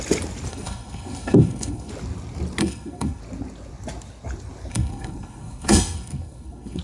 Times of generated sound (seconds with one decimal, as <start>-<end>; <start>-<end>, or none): 0.5-1.9; 2.6-3.2; 4.7-6.8